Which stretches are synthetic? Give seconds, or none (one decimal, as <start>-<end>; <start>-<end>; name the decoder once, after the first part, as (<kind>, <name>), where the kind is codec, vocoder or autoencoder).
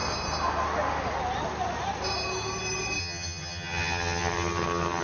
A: 3.0-5.0 (vocoder, HiFi-GAN)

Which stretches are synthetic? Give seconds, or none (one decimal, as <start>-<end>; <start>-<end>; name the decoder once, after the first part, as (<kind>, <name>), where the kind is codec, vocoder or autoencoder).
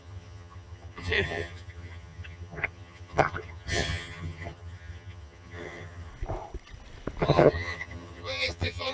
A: 0.0-6.1 (vocoder, HiFi-GAN); 7.2-8.9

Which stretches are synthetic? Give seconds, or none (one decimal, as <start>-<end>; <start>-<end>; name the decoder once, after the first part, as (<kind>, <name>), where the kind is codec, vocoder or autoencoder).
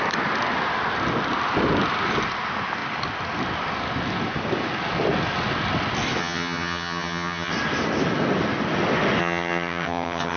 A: 6.2-7.5 (vocoder, HiFi-GAN); 9.2-10.4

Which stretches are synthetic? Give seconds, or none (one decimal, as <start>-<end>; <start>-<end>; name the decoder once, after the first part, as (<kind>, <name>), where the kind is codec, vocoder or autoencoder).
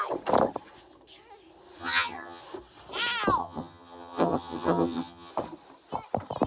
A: 1.8-2.4 (vocoder, HiFi-GAN); 3.4-5.3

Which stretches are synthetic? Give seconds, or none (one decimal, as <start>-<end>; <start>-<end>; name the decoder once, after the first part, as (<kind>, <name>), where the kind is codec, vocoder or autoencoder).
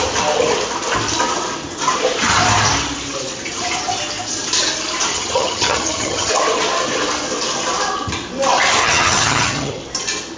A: 5.1-6.3 (vocoder, HiFi-GAN); 8.8-9.8